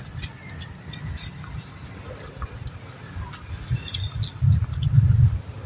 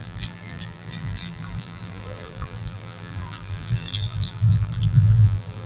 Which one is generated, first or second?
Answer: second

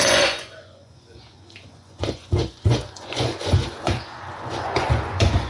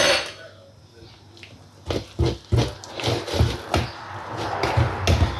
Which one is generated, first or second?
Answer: first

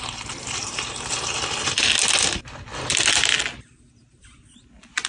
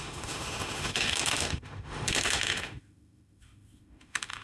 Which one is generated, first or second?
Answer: second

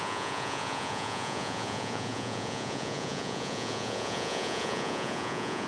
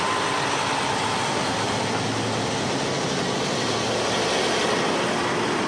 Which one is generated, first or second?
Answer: first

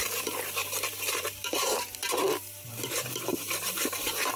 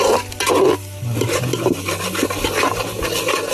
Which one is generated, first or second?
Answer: first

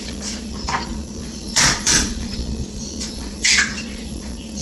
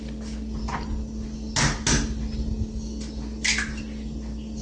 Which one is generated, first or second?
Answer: first